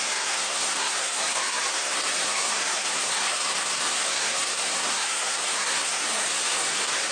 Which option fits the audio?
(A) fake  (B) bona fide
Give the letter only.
A